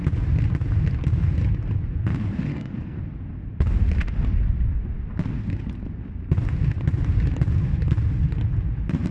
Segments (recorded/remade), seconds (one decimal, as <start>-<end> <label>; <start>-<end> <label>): 0.0-2.5 recorded; 2.5-3.0 remade; 3.0-9.1 recorded